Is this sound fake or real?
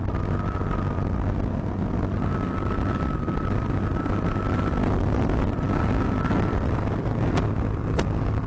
real